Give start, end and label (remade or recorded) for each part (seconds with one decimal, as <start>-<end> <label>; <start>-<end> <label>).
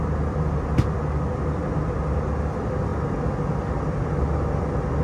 0.0-5.0 recorded